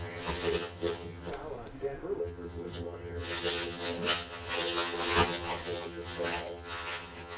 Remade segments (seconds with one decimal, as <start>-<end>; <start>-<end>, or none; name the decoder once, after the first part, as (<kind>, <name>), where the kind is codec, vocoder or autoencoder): 0.0-1.3 (vocoder, HiFi-GAN); 2.2-7.4